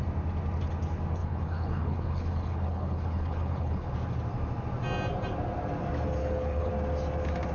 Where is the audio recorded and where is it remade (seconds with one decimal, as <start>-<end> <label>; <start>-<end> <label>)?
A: 0.0-1.2 recorded; 1.2-3.9 remade; 3.9-6.2 recorded; 6.2-6.7 remade; 6.7-7.5 recorded